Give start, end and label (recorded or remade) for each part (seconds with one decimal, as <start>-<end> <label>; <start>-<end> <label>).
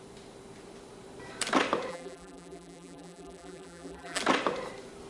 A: 0.0-1.9 recorded; 1.9-4.2 remade; 4.2-5.1 recorded